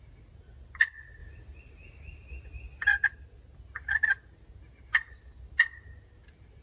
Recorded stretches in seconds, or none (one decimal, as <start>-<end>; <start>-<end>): 0.0-6.6